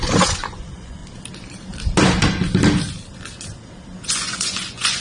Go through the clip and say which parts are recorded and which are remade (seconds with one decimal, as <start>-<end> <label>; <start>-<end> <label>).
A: 0.0-1.0 remade; 1.0-4.0 recorded; 4.0-5.0 remade